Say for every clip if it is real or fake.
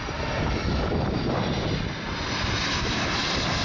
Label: real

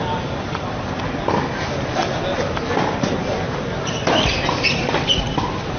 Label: real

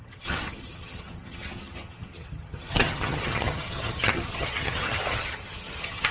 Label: fake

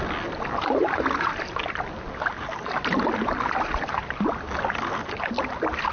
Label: real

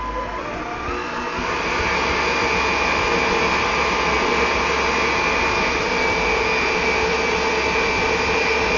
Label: real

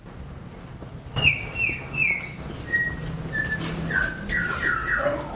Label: real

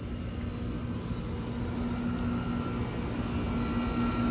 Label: real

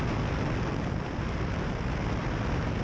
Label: real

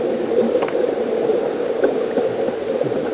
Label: real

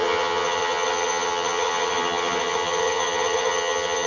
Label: fake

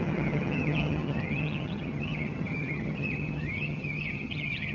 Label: fake